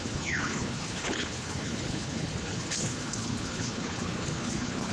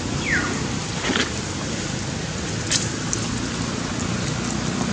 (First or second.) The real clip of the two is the second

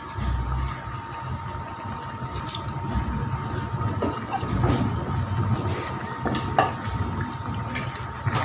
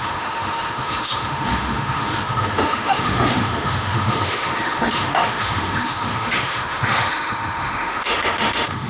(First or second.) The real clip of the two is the first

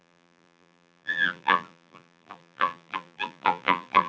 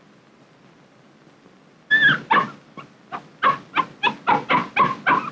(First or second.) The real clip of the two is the second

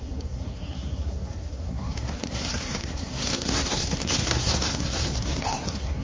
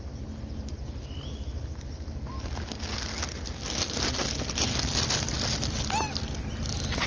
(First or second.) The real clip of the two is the second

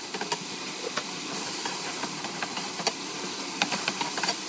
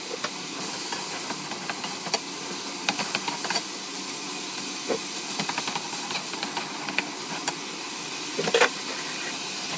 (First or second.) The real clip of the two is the second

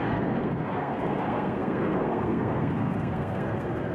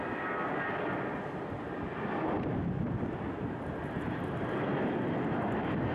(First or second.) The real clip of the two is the second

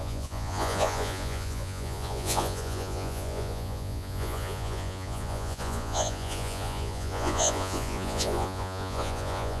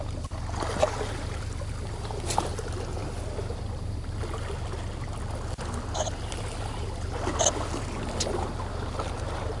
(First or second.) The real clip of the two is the second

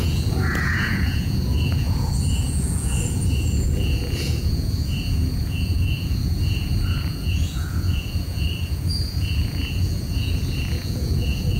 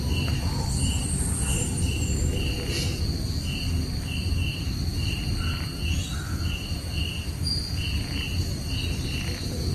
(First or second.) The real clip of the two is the second